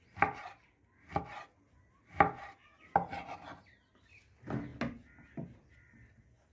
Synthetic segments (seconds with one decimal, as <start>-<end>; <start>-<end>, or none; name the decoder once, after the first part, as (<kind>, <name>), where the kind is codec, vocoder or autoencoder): none